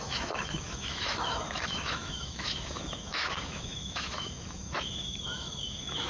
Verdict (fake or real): fake